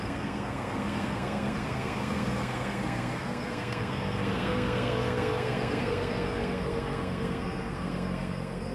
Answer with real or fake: fake